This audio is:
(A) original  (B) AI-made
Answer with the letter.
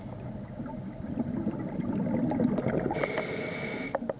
A